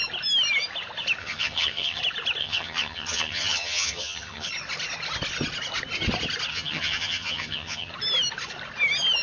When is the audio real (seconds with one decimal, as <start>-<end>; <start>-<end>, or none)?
0.0-1.2; 2.0-2.4; 4.5-6.5; 7.9-9.2